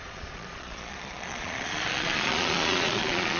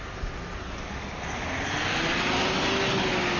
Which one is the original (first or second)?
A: second